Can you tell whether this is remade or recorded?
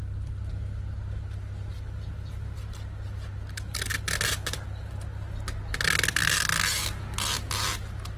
recorded